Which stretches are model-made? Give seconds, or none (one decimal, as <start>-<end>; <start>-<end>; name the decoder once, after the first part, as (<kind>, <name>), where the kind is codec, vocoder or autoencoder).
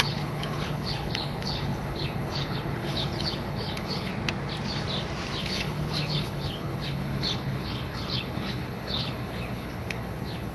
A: 0.0-4.1 (codec, HILCodec); 5.4-10.5